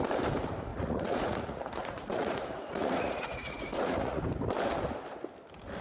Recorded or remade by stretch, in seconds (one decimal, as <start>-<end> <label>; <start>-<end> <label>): 0.0-0.7 recorded; 0.7-4.2 remade; 4.2-5.8 recorded